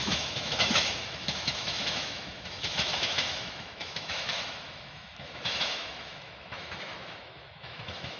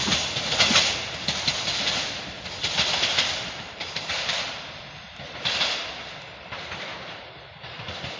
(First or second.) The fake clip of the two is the first